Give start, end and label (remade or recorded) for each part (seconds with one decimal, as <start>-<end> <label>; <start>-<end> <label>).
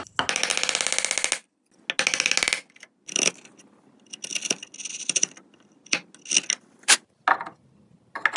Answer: 0.0-8.4 recorded